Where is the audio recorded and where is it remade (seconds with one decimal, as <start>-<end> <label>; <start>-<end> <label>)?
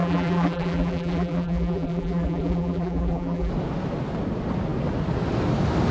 0.0-3.5 remade; 3.5-5.9 recorded